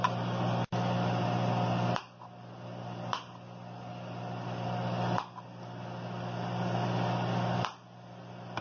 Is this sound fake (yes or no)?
no